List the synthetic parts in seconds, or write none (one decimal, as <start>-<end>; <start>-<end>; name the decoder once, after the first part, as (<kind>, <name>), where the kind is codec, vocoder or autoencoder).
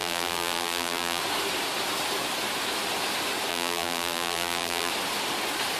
0.0-1.2 (vocoder, BigVGAN v2); 3.5-4.9